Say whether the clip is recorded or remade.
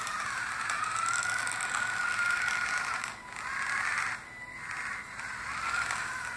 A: recorded